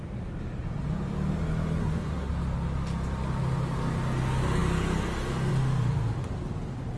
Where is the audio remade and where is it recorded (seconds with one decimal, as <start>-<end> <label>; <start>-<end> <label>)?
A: 0.0-1.8 recorded; 1.8-2.3 remade; 2.3-7.0 recorded